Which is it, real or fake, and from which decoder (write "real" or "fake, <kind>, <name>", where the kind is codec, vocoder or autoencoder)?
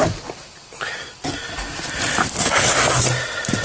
real